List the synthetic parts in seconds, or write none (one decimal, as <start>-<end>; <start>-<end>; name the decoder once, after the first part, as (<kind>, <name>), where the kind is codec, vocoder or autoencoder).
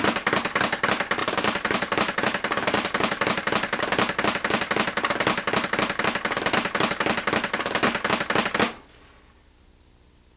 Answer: 1.2-3.8 (vocoder, BigVGAN v2)